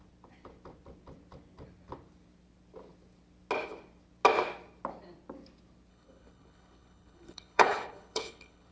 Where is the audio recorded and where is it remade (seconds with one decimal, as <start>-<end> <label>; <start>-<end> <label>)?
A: 0.0-5.9 recorded; 5.9-8.7 remade